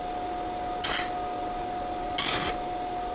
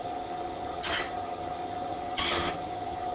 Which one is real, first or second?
first